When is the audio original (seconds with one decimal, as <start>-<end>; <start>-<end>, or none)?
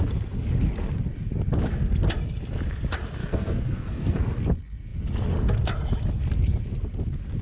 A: 0.0-3.2; 4.2-7.4